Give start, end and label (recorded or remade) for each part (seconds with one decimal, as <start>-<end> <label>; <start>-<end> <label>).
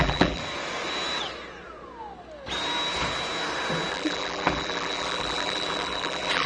0.0-0.4 remade; 0.4-3.9 recorded; 3.9-6.5 remade